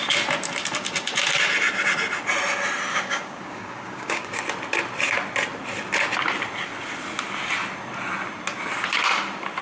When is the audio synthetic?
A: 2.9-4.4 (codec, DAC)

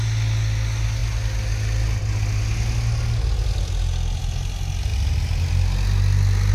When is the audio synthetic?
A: none